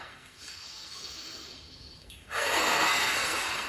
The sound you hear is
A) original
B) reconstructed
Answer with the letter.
B